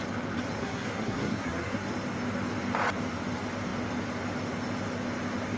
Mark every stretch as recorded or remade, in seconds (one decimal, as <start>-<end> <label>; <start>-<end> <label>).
0.0-0.6 recorded; 0.6-1.9 remade; 1.9-5.6 recorded